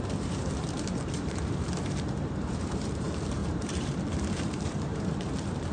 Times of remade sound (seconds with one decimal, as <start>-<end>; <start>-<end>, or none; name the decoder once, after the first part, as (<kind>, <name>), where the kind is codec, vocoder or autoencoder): 0.0-5.7 (vocoder, BigVGAN v2)